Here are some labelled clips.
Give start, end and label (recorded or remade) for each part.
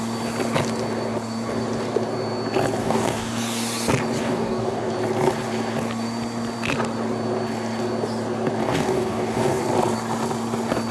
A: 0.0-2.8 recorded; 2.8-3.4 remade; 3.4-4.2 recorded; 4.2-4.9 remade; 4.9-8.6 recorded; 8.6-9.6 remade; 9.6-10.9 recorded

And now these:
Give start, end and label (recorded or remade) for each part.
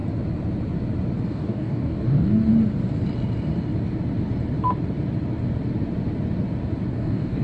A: 0.0-1.3 recorded; 1.3-2.5 remade; 2.5-6.9 recorded; 6.9-7.4 remade